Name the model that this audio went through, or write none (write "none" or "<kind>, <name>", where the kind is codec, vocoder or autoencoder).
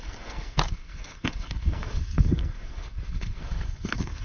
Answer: codec, SNAC